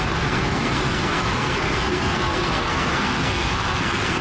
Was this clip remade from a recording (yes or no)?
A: yes